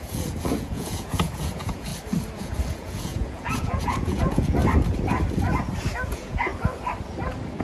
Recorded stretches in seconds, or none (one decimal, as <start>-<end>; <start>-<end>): 1.9-2.4; 4.6-6.1; 6.5-7.6